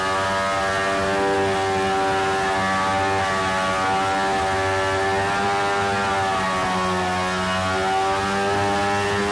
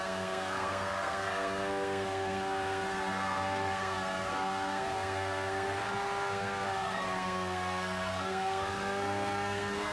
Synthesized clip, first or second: second